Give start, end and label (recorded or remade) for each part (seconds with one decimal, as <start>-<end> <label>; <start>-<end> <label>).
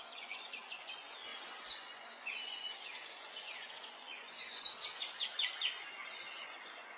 0.0-7.0 remade